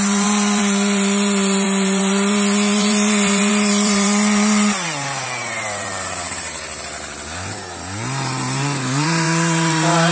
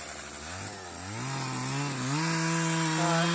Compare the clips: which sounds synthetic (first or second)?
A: first